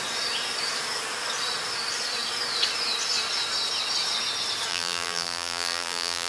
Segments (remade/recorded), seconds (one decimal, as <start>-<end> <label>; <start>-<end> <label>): 0.0-4.7 recorded; 4.7-6.3 remade